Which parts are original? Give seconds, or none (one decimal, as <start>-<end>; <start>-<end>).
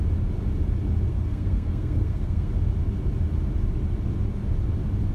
0.0-1.1; 2.5-5.1